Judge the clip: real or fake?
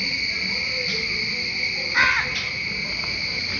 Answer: real